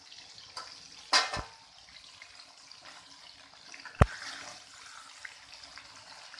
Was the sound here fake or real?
real